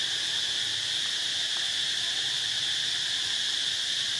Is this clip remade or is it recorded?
recorded